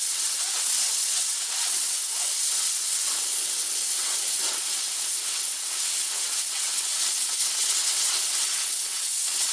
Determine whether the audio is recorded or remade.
remade